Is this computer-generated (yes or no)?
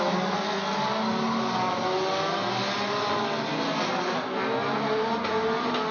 no